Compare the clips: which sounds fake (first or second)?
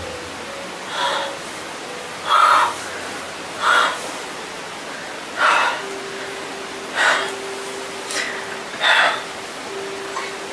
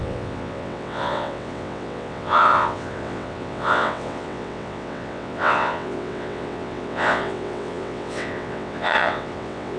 second